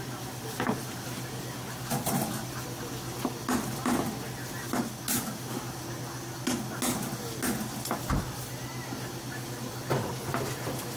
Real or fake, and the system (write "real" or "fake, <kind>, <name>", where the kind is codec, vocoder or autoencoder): real